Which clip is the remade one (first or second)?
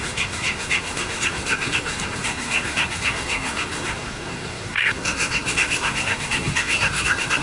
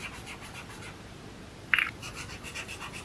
first